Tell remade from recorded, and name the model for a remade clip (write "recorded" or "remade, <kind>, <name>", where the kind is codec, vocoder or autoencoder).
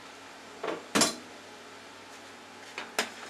recorded